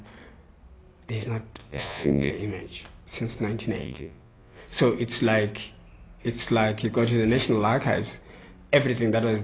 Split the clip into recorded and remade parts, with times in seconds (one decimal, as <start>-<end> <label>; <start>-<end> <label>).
0.0-1.6 recorded; 1.6-2.3 remade; 2.3-3.8 recorded; 3.8-4.6 remade; 4.6-9.4 recorded